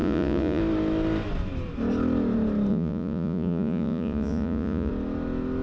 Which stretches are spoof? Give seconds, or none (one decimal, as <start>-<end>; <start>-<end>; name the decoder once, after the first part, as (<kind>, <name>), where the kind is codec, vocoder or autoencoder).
0.0-0.6 (vocoder, Vocos); 2.7-4.9